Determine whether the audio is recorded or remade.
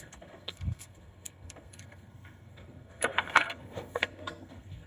remade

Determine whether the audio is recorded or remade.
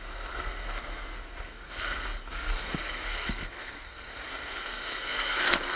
remade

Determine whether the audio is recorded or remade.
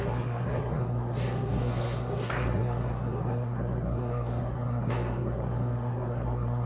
remade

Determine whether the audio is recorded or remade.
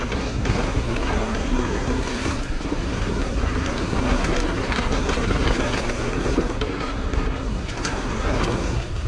remade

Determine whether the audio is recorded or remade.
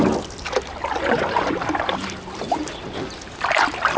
recorded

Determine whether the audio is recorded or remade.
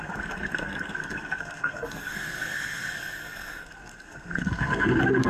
remade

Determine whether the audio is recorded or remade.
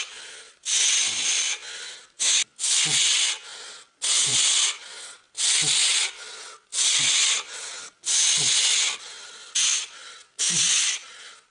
recorded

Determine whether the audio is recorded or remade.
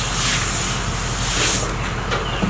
recorded